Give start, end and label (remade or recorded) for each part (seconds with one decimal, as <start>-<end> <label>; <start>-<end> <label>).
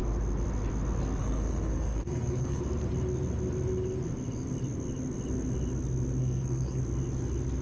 0.0-1.2 recorded; 1.2-2.6 remade; 2.6-6.2 recorded; 6.2-6.8 remade; 6.8-7.6 recorded